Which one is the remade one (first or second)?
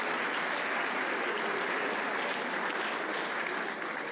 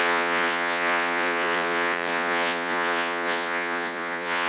second